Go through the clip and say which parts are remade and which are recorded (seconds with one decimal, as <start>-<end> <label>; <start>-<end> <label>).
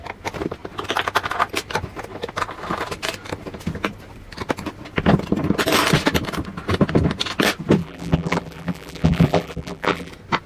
0.0-7.8 recorded; 7.8-10.1 remade; 10.1-10.5 recorded